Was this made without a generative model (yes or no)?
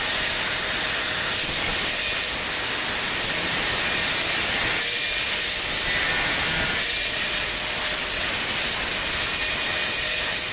yes